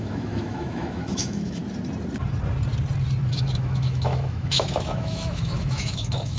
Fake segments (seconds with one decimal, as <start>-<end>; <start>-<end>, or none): 0.0-1.6; 3.3-6.4